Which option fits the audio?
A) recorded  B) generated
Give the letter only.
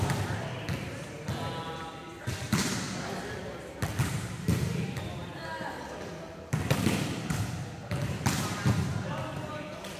A